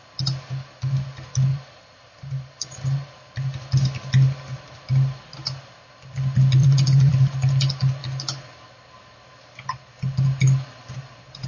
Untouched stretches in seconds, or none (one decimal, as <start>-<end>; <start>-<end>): 0.0-1.5; 3.2-6.6; 7.1-11.5